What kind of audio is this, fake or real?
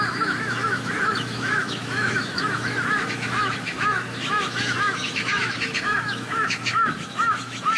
fake